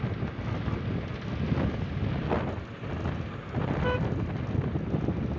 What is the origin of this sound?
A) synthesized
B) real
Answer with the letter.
B